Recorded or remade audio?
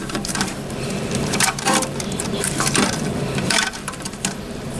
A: remade